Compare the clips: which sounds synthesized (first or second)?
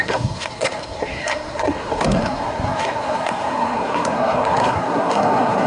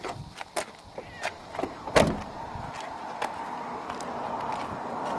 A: first